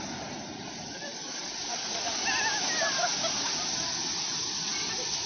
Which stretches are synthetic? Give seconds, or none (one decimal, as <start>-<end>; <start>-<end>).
none

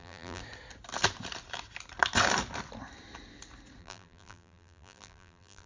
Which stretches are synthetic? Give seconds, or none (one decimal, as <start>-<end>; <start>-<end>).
0.0-0.4; 3.8-5.7

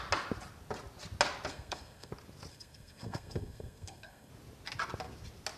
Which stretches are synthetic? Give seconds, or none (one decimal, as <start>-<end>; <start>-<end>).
1.5-2.1; 2.5-4.3

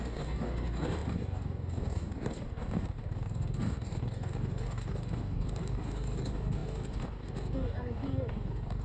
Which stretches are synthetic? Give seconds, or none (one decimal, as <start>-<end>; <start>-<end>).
0.0-8.8